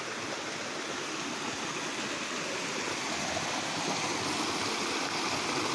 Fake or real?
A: real